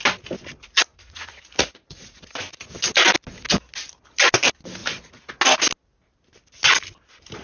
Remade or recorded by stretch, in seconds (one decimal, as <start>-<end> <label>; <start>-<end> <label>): 0.0-0.9 recorded; 0.9-2.2 remade; 2.2-4.8 recorded; 4.8-5.3 remade; 5.3-7.4 recorded